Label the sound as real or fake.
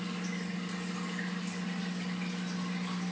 real